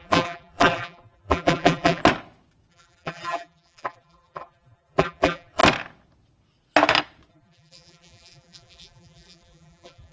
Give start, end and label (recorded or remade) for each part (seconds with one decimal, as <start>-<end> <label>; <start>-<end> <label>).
0.0-2.0 remade; 2.0-2.7 recorded; 2.7-5.6 remade; 5.6-7.3 recorded; 7.3-10.1 remade

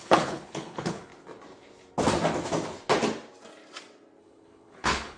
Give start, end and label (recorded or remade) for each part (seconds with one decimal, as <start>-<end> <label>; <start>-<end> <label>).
0.0-1.1 remade; 1.1-4.2 recorded; 4.2-5.2 remade

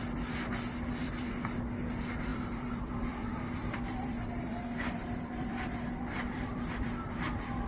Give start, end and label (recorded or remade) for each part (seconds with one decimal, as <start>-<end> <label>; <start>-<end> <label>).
0.0-1.0 recorded; 1.0-7.7 remade

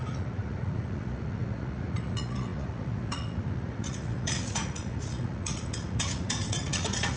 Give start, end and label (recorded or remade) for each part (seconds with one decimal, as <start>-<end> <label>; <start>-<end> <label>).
0.0-7.2 remade

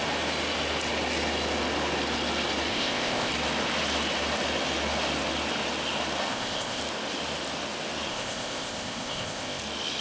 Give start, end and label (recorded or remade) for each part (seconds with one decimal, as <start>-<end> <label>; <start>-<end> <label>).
0.0-2.7 recorded; 2.7-3.3 remade; 3.3-6.3 recorded; 6.3-6.8 remade; 6.8-8.1 recorded; 8.1-9.6 remade; 9.6-10.0 recorded